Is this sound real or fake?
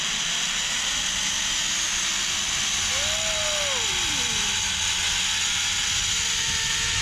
real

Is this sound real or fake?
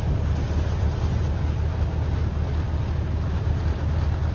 real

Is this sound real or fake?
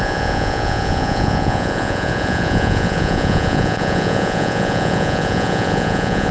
fake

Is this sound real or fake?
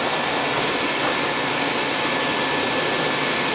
real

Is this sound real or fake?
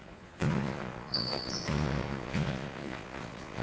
fake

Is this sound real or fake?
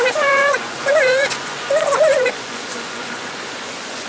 fake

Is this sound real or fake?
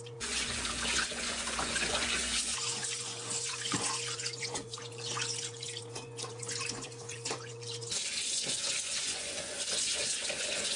fake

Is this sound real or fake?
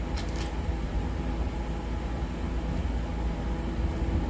real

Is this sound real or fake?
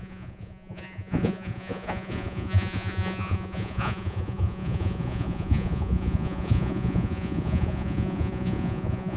fake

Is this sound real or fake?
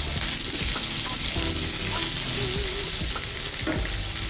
real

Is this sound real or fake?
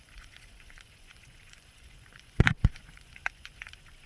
fake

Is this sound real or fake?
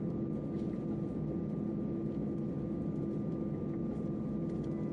real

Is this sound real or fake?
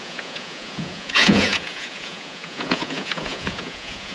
fake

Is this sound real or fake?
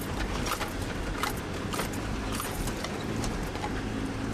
real